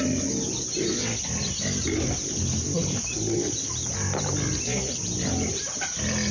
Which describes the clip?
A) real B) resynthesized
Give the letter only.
A